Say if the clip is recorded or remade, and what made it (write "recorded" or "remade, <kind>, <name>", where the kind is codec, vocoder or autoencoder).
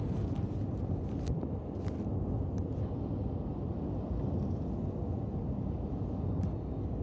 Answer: recorded